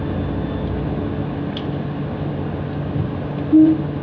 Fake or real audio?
real